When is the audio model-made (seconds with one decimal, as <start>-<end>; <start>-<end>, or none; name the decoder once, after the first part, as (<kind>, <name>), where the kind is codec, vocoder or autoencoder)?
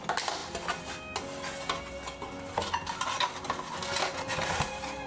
none